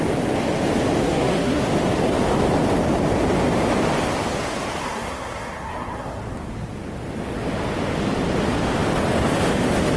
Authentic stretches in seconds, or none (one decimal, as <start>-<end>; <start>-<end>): 0.0-1.0; 1.6-4.8; 6.2-10.0